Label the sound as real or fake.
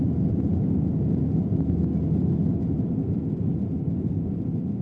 real